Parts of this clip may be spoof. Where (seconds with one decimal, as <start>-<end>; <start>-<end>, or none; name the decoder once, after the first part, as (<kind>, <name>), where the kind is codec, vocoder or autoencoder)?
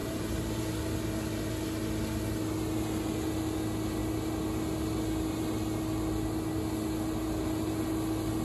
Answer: 0.0-0.6 (vocoder, BigVGAN v2)